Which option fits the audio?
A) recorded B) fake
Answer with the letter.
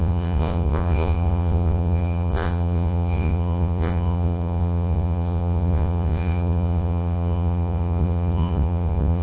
B